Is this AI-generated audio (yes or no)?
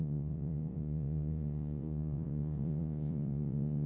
yes